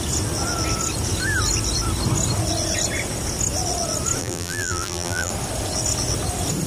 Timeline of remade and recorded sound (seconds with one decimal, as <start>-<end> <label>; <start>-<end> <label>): 0.0-4.2 recorded; 4.2-5.3 remade; 5.3-6.7 recorded